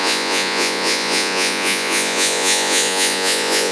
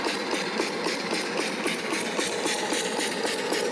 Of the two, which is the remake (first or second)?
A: first